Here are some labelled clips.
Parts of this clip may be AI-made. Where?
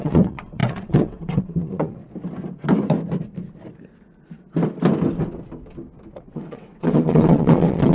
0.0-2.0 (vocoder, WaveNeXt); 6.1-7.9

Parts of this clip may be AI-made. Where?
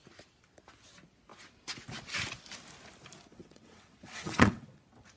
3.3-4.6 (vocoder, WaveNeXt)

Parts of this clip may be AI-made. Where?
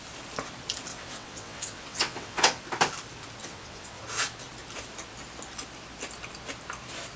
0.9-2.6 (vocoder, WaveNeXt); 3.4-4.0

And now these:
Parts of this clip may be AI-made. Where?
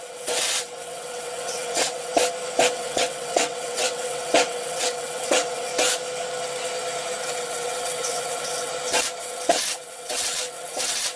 0.0-2.1 (vocoder, WaveNeXt); 2.7-5.7; 7.2-8.7; 9.2-11.2